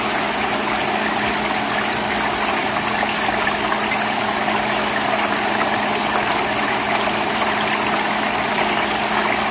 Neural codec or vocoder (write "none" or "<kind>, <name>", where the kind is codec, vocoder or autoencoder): none